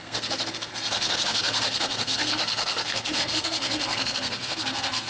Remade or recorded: remade